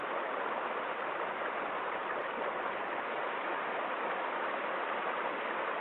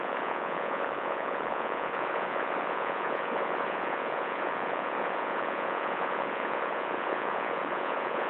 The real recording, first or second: first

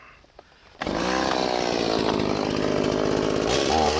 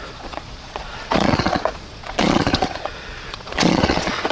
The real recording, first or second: first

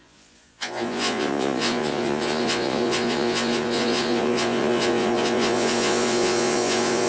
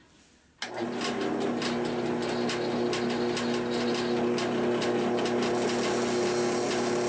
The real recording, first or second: second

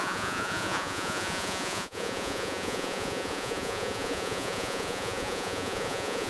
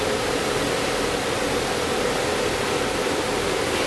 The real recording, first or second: second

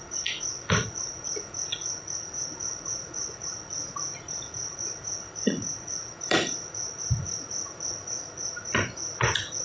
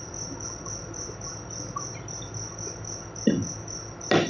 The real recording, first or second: second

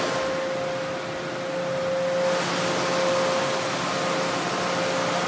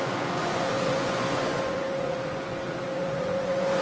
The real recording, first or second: first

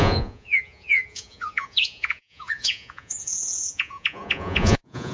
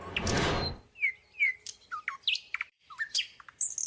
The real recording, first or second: second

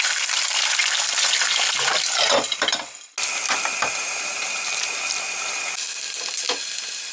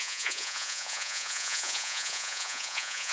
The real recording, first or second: first